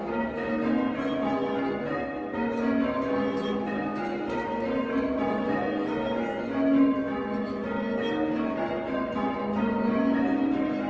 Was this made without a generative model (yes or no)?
yes